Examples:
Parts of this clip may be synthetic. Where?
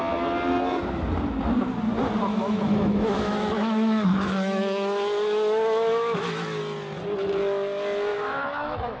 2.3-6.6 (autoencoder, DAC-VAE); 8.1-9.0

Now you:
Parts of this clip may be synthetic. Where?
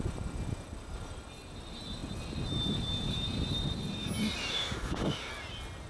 4.5-5.3 (autoencoder, DAC-VAE)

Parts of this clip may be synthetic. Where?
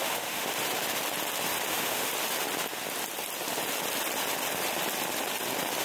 0.0-0.5 (autoencoder, DAC-VAE); 1.7-2.1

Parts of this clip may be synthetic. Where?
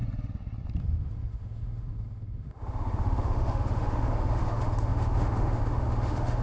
0.8-6.4 (autoencoder, DAC-VAE)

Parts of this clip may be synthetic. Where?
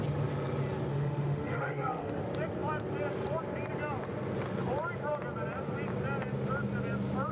0.9-2.2 (autoencoder, DAC-VAE)